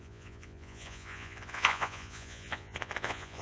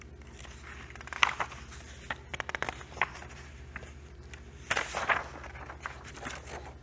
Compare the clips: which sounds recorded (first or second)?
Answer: second